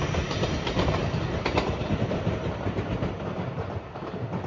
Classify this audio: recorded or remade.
recorded